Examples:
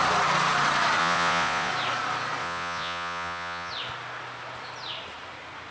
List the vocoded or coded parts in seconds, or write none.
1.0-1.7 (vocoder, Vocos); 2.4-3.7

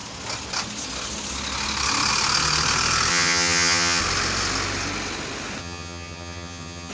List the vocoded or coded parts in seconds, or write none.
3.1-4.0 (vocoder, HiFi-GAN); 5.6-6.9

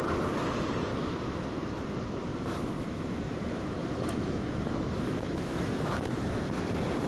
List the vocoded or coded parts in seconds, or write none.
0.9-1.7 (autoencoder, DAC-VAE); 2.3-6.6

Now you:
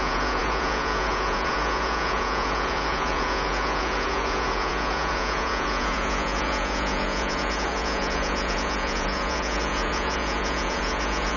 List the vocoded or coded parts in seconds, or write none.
0.0-11.4 (vocoder, Vocos)

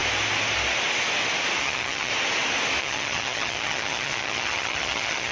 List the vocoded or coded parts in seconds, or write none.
1.6-2.1 (vocoder, HiFi-GAN); 2.8-5.3